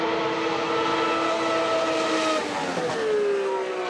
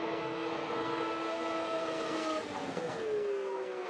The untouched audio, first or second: first